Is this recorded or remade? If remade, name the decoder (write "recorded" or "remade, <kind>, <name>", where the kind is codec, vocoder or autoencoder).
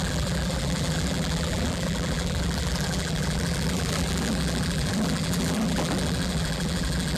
remade, vocoder, BigVGAN v2